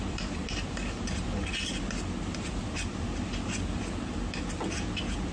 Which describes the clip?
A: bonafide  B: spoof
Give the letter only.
A